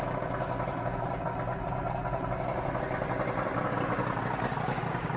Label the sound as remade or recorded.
recorded